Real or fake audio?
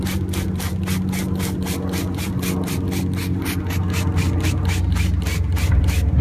real